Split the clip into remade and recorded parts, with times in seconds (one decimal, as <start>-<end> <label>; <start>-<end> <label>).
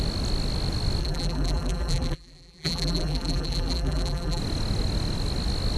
0.0-1.0 recorded; 1.0-4.4 remade; 4.4-5.8 recorded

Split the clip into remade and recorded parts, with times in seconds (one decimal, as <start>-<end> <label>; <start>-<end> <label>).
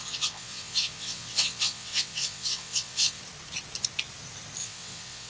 0.0-3.2 remade; 3.2-4.6 recorded; 4.6-5.3 remade